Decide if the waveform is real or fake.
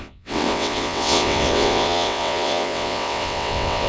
fake